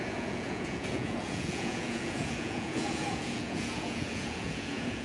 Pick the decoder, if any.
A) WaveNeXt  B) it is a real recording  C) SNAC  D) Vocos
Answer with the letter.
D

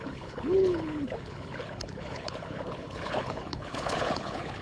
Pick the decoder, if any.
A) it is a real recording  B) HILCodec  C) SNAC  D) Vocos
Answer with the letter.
B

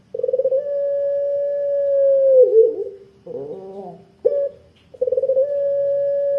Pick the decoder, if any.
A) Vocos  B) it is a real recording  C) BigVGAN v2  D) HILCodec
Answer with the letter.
B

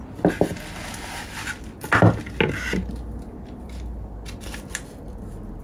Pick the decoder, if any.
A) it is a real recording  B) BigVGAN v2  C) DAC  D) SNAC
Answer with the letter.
A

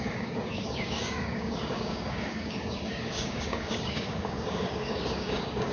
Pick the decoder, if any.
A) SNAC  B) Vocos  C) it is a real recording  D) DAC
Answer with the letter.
D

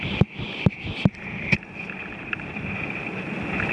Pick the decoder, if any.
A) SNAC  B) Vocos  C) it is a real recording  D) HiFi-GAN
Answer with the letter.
C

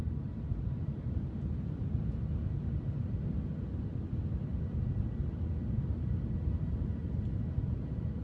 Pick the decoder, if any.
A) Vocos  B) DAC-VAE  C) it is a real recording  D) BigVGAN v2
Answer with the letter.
C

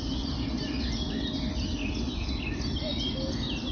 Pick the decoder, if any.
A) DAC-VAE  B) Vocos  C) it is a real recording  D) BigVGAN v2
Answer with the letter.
C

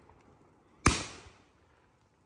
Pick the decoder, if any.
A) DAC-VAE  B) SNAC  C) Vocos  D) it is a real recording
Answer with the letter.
D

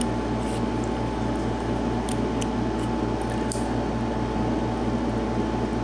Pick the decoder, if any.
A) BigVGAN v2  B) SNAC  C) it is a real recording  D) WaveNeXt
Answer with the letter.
C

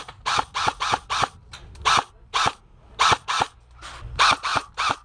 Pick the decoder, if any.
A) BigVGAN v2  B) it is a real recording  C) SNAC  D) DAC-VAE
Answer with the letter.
B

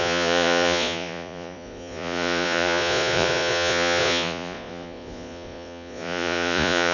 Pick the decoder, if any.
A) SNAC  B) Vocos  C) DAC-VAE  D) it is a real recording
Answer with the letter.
B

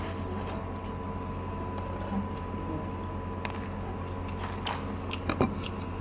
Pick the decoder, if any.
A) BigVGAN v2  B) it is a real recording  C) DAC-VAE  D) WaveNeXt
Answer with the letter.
B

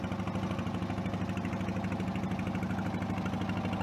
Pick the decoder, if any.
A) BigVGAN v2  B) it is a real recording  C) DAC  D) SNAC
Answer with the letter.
B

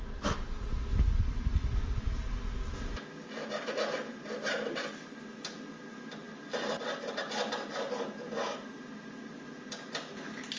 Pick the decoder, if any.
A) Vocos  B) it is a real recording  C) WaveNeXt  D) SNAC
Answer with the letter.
B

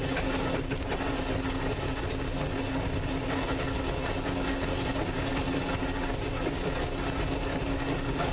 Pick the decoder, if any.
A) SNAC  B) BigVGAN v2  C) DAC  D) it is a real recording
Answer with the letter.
D